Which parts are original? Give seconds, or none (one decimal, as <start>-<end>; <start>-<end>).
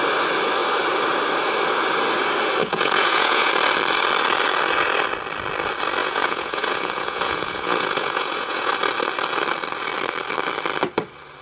0.0-2.6; 3.5-6.0; 8.7-11.4